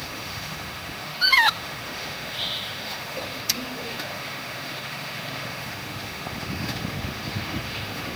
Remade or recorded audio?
remade